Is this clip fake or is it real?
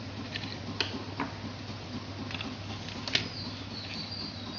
real